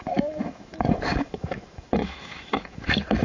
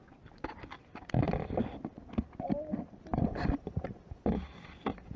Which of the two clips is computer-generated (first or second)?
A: first